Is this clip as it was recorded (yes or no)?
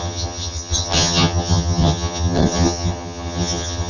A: no